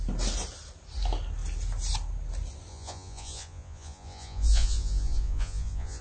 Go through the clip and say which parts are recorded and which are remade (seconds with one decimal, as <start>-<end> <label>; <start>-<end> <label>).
0.0-2.7 recorded; 2.7-6.0 remade